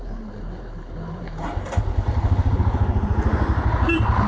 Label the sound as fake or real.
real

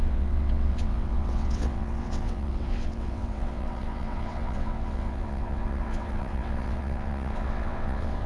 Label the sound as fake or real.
fake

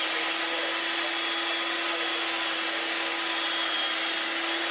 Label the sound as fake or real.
real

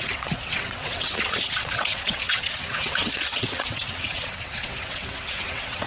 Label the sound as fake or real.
fake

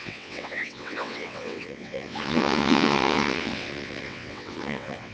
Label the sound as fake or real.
fake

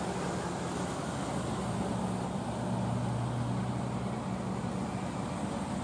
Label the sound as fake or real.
real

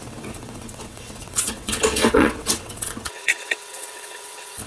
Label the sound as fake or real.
fake